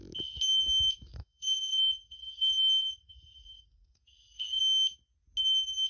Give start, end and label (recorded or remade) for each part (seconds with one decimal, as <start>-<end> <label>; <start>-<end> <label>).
0.0-1.1 recorded; 1.1-4.6 remade; 4.6-5.9 recorded